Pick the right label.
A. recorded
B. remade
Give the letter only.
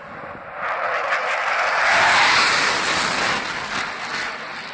A